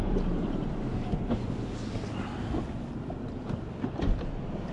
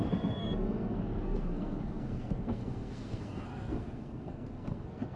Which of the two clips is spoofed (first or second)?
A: second